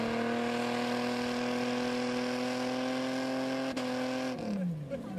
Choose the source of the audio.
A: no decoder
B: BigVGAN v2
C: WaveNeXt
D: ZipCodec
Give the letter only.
A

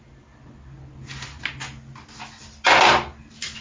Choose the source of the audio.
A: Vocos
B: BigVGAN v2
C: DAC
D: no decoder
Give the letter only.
D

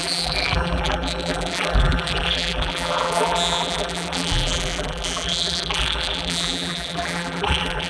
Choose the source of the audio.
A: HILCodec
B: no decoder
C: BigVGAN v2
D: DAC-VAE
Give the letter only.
C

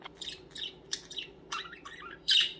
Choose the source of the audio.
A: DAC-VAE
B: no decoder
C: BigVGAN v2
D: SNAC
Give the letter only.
C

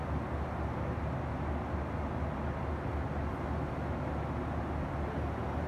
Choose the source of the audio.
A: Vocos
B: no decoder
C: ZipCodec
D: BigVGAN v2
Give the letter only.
B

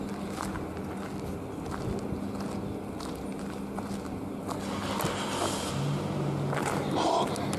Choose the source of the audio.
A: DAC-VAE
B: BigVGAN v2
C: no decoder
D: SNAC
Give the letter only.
C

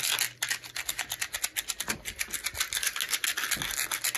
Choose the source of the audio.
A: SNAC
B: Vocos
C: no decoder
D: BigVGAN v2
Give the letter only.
C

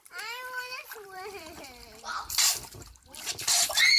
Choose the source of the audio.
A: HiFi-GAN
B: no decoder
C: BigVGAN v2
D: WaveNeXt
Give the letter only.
C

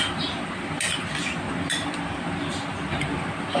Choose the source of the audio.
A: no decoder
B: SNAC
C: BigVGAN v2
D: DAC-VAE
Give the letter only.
A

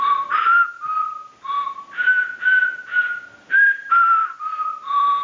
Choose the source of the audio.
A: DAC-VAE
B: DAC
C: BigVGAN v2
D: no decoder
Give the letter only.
C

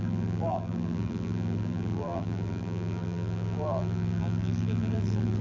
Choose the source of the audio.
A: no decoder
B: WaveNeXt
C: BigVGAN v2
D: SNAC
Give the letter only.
C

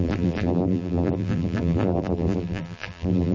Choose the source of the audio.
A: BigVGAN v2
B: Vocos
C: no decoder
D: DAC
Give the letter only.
A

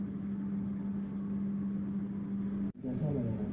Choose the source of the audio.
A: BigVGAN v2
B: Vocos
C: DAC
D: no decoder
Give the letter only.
D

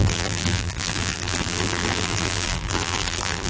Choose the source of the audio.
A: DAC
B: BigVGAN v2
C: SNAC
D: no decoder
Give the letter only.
B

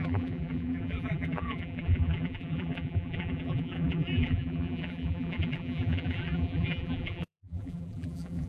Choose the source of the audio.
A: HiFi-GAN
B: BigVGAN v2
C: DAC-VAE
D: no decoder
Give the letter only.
B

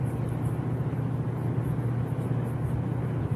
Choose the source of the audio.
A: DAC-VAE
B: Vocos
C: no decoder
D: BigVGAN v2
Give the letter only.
C